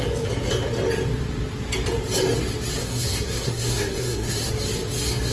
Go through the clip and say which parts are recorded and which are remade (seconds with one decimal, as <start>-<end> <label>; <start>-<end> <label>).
0.0-2.8 recorded; 2.8-4.5 remade; 4.5-5.3 recorded